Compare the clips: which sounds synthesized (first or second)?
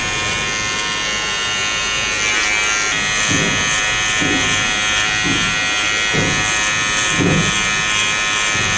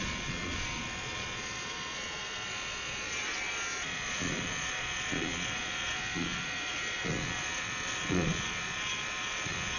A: second